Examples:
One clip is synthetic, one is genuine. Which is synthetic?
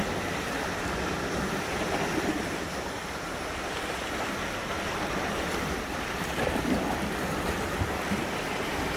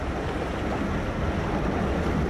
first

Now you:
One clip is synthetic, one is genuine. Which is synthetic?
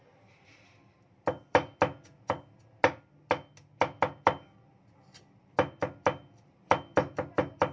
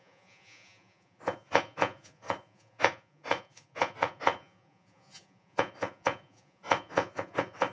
second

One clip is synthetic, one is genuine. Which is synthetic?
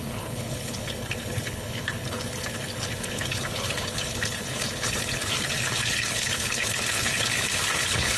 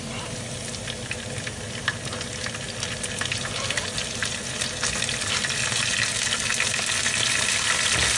first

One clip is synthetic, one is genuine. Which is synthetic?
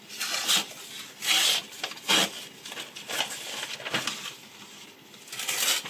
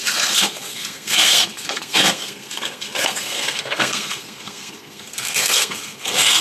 second